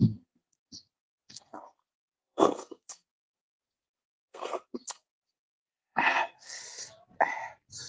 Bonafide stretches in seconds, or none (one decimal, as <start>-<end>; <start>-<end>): 6.6-7.9